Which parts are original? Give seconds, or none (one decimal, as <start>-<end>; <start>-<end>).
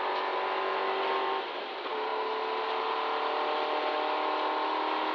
0.0-5.1